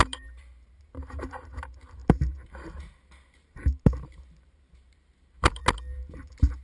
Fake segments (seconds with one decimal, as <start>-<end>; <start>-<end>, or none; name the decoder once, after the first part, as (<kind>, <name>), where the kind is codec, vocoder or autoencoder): 0.0-5.6 (vocoder, BigVGAN v2); 6.1-6.6